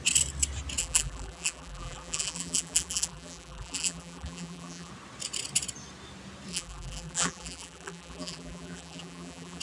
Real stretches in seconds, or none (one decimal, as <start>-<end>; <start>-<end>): 0.0-0.8; 4.9-6.5